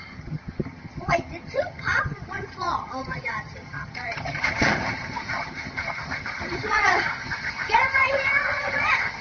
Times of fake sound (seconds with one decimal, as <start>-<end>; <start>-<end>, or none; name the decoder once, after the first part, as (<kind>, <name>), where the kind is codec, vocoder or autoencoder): 0.0-9.2 (vocoder, HiFi-GAN)

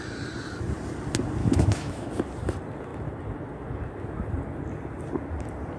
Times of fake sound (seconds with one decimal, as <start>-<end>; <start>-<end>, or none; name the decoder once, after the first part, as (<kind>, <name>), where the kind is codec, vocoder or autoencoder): 1.4-2.1 (autoencoder, DAC-VAE)

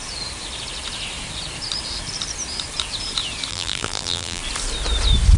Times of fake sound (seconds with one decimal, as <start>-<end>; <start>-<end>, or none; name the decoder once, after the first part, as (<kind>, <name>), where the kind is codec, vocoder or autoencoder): 3.5-4.4 (vocoder, BigVGAN v2)

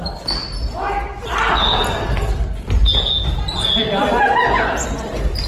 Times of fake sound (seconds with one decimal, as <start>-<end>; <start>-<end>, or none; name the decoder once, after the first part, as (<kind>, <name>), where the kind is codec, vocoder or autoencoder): none

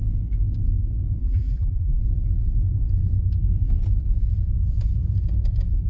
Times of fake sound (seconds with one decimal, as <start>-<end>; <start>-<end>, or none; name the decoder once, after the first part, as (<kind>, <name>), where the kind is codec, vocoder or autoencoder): 1.2-2.0 (vocoder, BigVGAN v2)

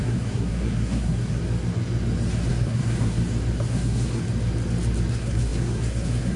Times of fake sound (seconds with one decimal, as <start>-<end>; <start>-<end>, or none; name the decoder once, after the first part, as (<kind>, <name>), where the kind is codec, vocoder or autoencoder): 0.0-1.4 (codec, SNAC); 2.5-3.2; 3.7-4.2; 5.1-6.4

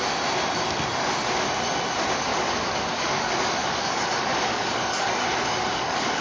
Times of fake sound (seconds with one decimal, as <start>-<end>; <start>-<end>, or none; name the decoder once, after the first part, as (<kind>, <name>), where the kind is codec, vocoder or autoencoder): 2.3-5.2 (codec, DAC); 5.7-6.2

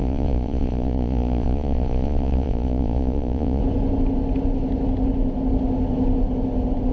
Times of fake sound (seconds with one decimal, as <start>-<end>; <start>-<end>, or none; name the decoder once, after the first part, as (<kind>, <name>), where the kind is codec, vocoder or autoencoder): 0.0-3.6 (vocoder, Vocos)